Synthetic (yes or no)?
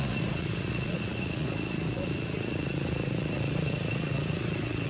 yes